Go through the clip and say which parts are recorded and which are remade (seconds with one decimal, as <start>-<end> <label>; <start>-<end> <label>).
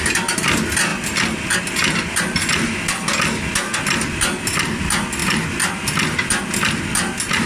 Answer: 0.0-7.5 recorded